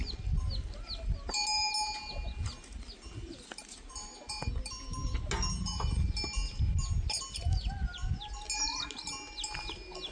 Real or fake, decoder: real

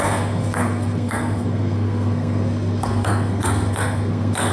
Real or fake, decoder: fake, codec, SNAC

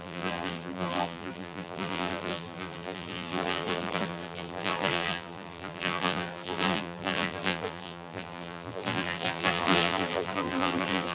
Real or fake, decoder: fake, vocoder, BigVGAN v2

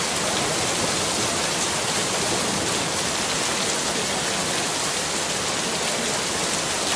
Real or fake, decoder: real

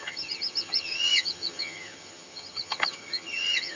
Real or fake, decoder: fake, vocoder, HiFi-GAN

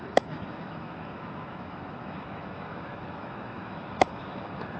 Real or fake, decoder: fake, autoencoder, DAC-VAE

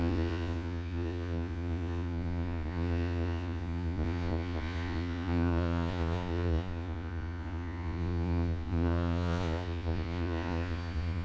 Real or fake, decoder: fake, vocoder, Vocos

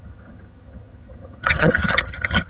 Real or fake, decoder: fake, vocoder, HiFi-GAN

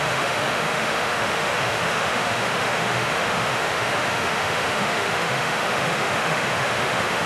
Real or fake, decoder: fake, autoencoder, DAC-VAE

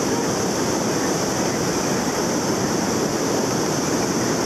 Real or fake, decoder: real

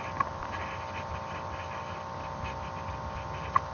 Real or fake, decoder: real